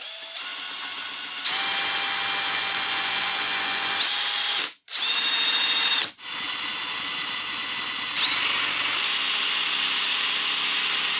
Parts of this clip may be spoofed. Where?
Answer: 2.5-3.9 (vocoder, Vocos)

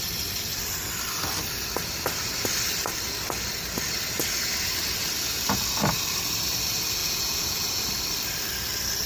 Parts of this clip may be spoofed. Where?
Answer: 7.0-7.8 (vocoder, Vocos)